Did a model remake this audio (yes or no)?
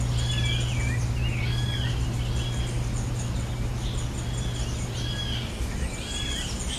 no